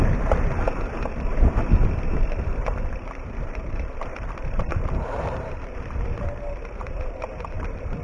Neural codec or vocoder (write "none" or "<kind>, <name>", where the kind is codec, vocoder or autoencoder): vocoder, BigVGAN v2